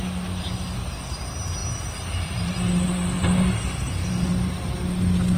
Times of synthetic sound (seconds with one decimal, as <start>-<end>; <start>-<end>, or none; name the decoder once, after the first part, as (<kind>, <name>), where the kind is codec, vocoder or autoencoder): none